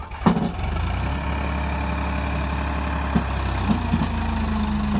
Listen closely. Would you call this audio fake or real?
real